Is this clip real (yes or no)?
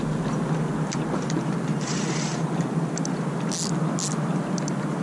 yes